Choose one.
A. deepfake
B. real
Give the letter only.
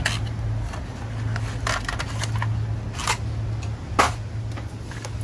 B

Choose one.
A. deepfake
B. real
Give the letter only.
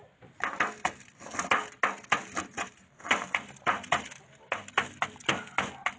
B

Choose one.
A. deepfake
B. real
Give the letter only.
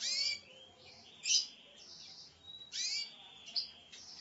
B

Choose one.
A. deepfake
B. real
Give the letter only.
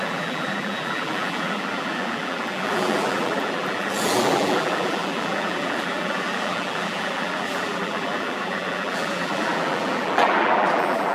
A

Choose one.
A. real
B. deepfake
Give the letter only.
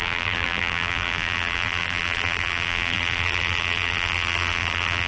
B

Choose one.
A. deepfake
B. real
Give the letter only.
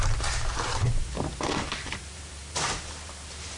A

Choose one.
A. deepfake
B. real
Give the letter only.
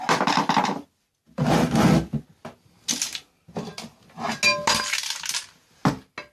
B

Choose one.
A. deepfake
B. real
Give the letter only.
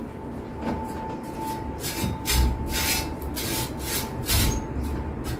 B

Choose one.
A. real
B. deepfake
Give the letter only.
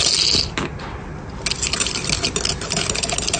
A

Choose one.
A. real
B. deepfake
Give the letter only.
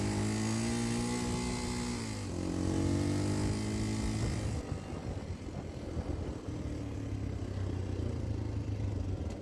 A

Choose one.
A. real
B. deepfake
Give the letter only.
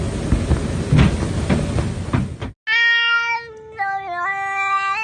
A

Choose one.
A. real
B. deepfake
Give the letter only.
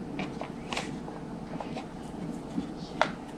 A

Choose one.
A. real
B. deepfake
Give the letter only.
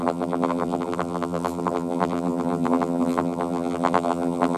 B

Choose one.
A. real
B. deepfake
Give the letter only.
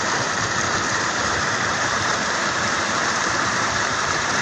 B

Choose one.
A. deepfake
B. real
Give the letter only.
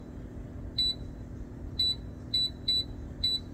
B